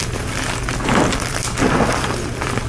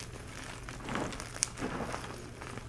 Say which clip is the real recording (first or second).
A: second